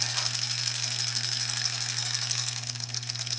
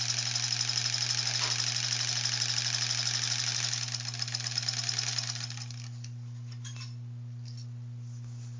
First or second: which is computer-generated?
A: first